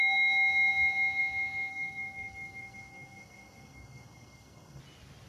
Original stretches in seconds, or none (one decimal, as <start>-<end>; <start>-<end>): 0.0-1.7; 4.8-5.3